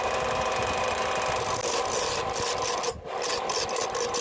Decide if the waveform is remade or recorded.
recorded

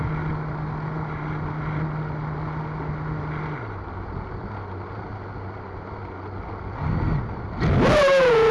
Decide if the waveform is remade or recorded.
recorded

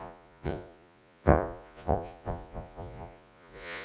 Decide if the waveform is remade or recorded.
remade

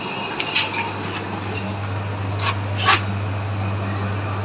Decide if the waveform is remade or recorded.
recorded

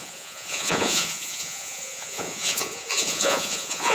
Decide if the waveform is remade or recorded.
remade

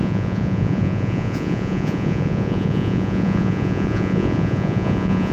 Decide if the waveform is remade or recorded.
remade